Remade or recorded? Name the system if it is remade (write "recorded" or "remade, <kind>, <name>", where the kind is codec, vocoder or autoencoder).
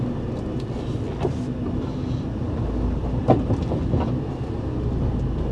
recorded